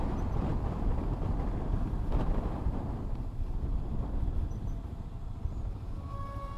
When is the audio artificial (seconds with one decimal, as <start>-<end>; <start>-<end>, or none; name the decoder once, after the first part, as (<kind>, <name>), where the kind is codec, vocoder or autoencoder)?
none